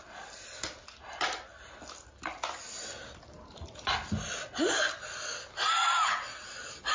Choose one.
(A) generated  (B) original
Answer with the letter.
B